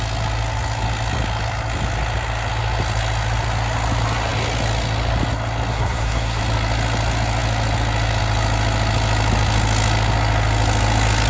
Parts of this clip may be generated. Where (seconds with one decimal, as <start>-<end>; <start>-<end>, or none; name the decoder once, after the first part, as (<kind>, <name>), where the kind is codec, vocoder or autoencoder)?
5.7-6.4 (codec, SNAC)